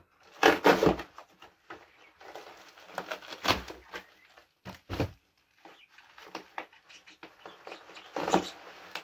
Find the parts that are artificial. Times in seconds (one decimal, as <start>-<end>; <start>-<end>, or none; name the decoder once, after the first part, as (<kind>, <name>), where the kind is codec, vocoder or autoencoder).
none